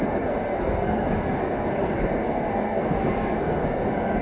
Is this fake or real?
fake